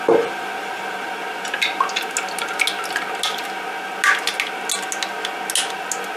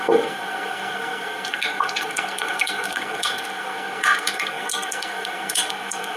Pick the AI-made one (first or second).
second